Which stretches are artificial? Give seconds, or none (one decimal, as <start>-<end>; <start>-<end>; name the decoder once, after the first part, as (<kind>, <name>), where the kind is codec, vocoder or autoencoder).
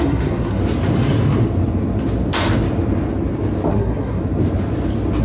0.0-0.6 (codec, SNAC); 3.7-4.2